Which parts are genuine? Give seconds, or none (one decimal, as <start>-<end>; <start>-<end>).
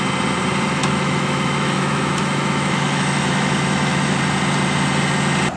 0.0-0.8; 4.2-5.6